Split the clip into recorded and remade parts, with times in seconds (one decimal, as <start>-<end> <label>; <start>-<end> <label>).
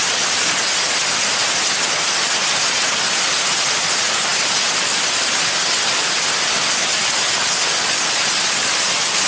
0.0-9.3 recorded